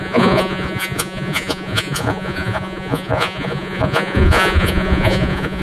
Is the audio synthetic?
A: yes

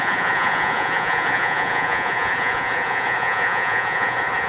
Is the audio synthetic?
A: yes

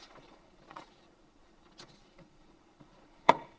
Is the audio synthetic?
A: yes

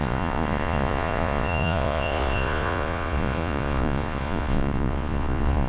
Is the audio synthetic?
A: yes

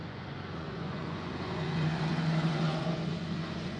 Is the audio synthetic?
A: yes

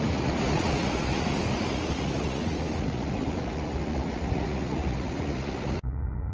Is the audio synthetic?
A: yes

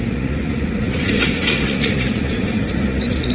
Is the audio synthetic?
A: yes